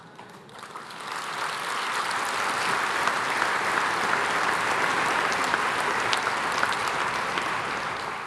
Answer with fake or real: real